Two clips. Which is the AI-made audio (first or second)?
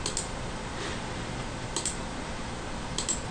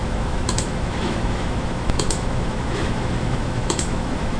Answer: second